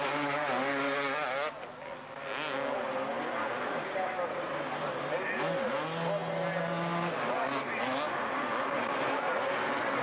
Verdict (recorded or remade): recorded